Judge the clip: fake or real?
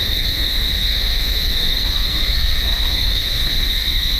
fake